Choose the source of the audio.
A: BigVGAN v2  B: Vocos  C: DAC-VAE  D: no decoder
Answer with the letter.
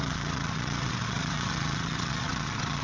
B